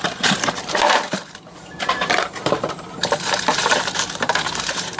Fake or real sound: fake